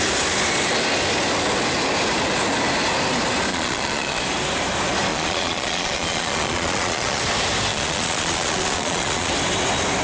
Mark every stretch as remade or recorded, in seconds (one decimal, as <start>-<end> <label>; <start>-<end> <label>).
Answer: 0.0-3.5 recorded; 3.5-4.2 remade; 4.2-5.1 recorded; 5.1-7.2 remade; 7.2-7.7 recorded; 7.7-9.3 remade; 9.3-10.0 recorded